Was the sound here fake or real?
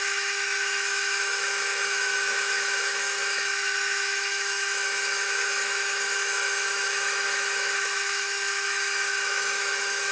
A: fake